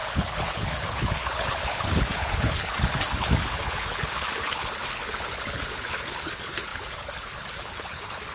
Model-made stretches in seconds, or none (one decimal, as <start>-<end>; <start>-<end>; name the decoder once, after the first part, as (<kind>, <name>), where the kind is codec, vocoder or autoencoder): 0.0-8.3 (codec, HILCodec)